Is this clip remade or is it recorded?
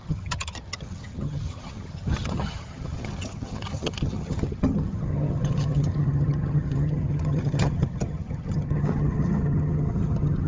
remade